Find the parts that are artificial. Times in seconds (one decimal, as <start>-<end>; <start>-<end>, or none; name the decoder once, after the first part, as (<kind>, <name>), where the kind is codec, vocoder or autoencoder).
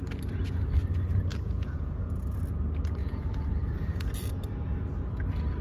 1.3-2.4 (vocoder, Vocos); 3.0-4.1